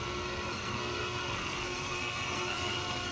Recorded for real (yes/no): no